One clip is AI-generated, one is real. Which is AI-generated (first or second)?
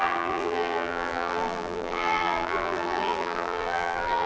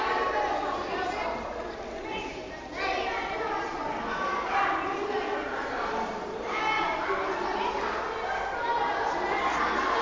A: first